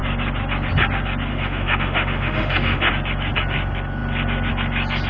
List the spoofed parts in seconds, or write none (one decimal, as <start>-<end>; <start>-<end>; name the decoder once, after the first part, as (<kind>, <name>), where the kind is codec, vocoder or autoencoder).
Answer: 1.3-2.9 (autoencoder, DAC-VAE)